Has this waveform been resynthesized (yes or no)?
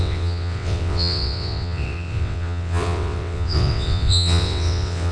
yes